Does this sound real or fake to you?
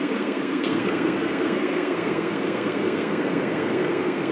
fake